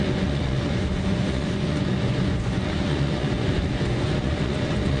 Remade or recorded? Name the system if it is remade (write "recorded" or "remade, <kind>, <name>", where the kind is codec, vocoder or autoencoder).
remade, vocoder, Vocos